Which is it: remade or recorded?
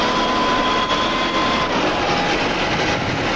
recorded